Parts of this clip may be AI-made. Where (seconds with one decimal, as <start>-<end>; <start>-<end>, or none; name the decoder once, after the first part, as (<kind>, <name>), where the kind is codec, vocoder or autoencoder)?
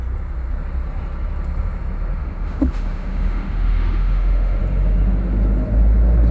2.2-4.6 (autoencoder, DAC-VAE)